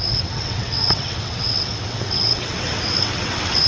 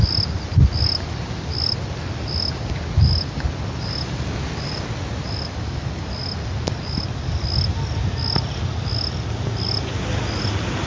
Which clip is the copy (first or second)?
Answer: first